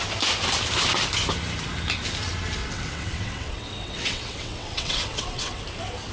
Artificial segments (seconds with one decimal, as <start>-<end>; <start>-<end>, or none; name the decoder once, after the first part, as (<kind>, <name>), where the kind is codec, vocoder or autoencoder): 2.6-5.6 (vocoder, WaveNeXt)